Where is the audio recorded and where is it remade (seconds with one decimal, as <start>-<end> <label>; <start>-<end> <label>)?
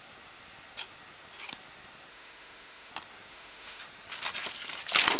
0.0-2.1 recorded; 2.1-2.9 remade; 2.9-3.3 recorded; 3.3-3.8 remade; 3.8-5.2 recorded